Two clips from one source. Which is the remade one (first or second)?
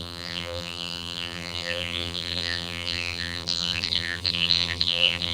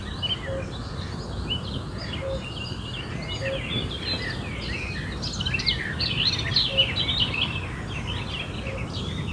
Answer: first